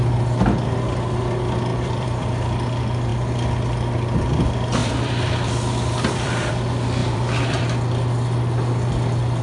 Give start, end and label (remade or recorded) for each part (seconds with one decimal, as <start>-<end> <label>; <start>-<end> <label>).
0.0-1.7 recorded; 1.7-2.4 remade; 2.4-4.8 recorded; 4.8-6.5 remade; 6.5-7.0 recorded; 7.0-7.6 remade; 7.6-9.4 recorded

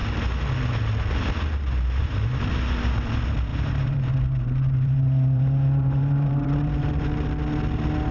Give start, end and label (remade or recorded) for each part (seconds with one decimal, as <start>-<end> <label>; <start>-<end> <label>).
0.0-3.5 recorded; 3.5-7.0 remade; 7.0-8.1 recorded

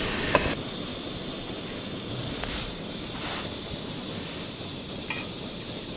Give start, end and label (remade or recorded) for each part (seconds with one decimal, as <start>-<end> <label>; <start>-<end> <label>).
0.0-6.0 recorded

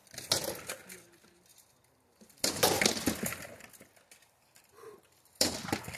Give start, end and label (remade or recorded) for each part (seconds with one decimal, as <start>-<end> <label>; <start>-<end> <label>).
0.0-6.0 recorded

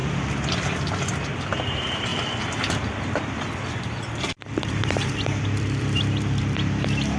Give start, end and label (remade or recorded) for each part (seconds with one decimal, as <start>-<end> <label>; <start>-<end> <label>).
0.0-2.1 remade; 2.1-4.3 recorded; 4.3-7.2 remade

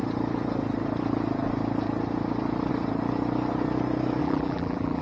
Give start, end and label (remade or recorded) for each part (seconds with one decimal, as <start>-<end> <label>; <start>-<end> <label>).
0.0-4.2 recorded; 4.2-5.0 remade